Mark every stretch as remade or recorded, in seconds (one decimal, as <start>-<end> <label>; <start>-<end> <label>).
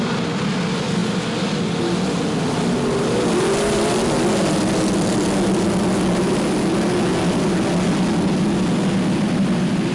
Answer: 0.0-9.9 recorded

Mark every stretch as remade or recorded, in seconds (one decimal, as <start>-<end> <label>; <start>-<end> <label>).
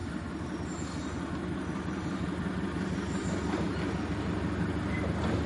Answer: 0.0-5.5 recorded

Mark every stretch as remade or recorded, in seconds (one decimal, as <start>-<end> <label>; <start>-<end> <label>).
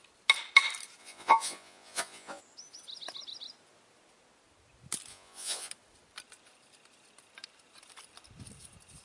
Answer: 0.0-1.0 recorded; 1.0-2.4 remade; 2.4-5.1 recorded; 5.1-5.7 remade; 5.7-9.0 recorded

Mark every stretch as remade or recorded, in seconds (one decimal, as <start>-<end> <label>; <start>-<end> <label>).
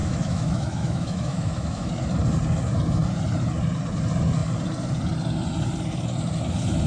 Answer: 0.0-1.9 remade; 1.9-6.9 recorded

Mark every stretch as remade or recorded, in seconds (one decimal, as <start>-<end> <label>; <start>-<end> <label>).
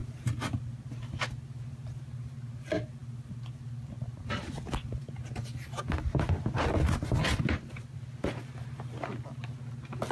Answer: 0.0-10.1 recorded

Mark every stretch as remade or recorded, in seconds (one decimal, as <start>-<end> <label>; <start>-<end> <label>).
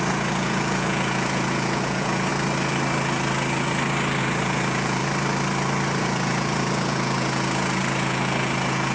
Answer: 0.0-2.3 remade; 2.3-4.2 recorded; 4.2-5.0 remade; 5.0-6.0 recorded; 6.0-8.9 remade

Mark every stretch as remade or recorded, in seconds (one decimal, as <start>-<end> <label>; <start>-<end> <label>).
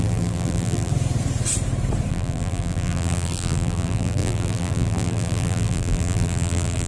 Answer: 0.0-0.9 remade; 0.9-2.1 recorded; 2.1-6.9 remade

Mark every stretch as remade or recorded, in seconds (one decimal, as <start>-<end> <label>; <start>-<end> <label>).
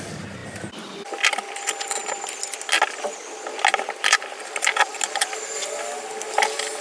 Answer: 0.0-6.8 recorded